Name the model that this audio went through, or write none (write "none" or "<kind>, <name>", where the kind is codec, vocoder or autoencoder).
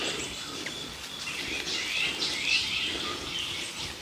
vocoder, BigVGAN v2